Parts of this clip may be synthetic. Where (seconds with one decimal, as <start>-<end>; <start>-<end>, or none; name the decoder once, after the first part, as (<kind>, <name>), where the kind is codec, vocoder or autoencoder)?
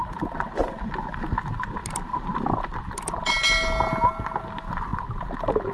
none